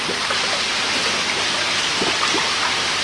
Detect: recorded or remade recorded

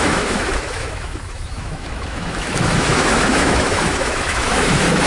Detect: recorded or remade remade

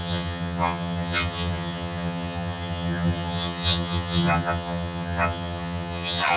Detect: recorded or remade remade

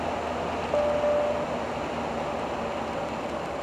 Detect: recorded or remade recorded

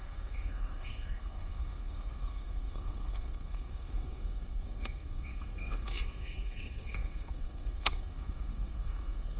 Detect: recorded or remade remade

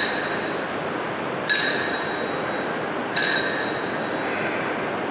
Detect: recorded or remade recorded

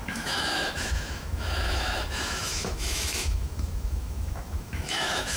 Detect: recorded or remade remade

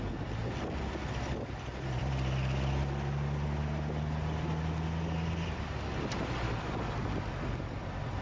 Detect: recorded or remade recorded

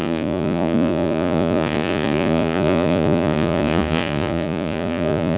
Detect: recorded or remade remade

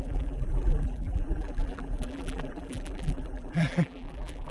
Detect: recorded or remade remade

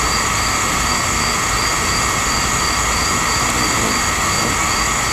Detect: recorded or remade recorded